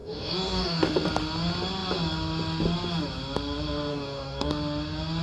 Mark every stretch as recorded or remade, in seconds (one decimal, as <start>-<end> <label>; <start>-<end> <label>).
0.0-0.8 remade; 0.8-3.9 recorded; 3.9-4.5 remade; 4.5-5.2 recorded